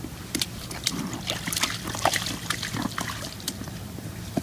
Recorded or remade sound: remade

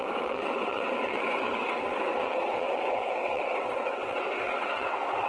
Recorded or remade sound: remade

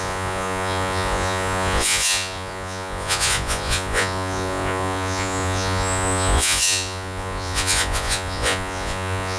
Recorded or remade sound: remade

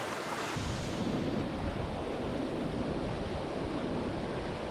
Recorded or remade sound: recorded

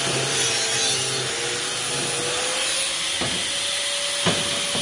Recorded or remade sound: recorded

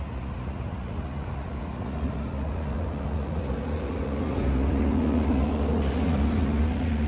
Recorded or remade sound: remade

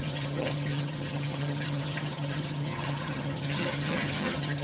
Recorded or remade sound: remade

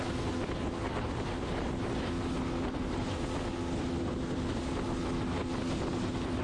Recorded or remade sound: recorded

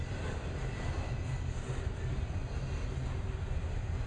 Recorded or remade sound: recorded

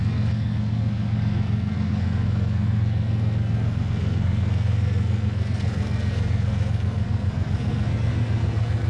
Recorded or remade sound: remade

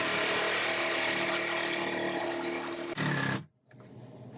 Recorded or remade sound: recorded